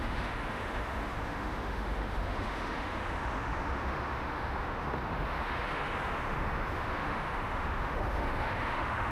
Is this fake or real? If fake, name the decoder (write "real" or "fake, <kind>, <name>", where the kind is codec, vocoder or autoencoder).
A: fake, autoencoder, DAC-VAE